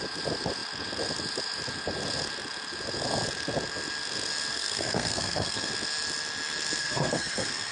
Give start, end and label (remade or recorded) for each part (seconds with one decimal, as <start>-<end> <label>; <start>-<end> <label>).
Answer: 0.0-4.5 recorded; 4.5-5.7 remade; 5.7-6.8 recorded; 6.8-7.7 remade